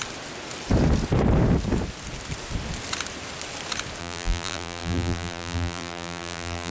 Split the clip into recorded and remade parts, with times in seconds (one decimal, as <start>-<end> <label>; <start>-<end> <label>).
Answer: 0.0-4.0 recorded; 4.0-6.7 remade